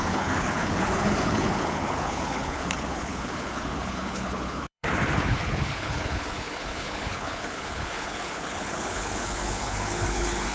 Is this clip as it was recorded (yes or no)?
no